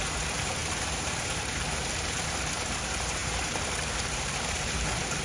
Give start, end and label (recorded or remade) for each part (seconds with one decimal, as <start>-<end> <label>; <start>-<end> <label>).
0.0-5.2 remade